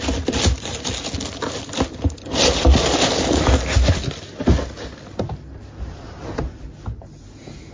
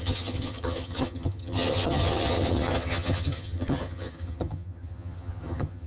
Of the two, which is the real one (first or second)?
first